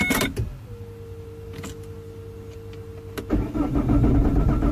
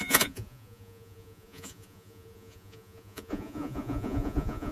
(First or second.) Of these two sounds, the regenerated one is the second